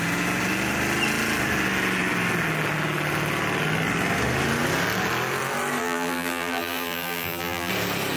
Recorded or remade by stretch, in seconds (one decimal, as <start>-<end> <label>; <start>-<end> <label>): 0.0-5.8 recorded; 5.8-7.7 remade; 7.7-8.2 recorded